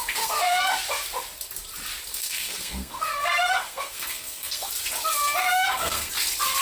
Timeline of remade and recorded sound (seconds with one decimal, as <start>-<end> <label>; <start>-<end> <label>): 0.0-0.6 remade; 0.6-2.1 recorded; 2.1-4.7 remade; 4.7-5.4 recorded; 5.4-6.1 remade; 6.1-6.6 recorded